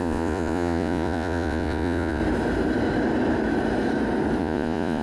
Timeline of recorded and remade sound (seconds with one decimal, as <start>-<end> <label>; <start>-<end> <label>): 0.0-2.2 remade; 2.2-4.4 recorded; 4.4-5.0 remade